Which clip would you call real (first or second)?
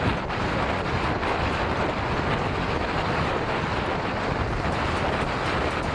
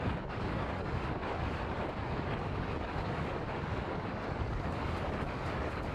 first